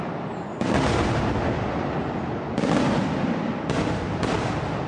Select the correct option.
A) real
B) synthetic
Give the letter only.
A